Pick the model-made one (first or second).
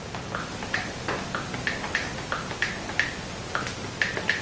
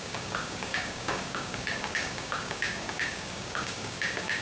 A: second